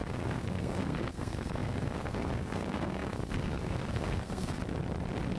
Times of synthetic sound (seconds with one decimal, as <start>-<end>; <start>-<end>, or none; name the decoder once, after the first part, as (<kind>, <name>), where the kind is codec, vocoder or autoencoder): 0.0-4.6 (codec, SNAC)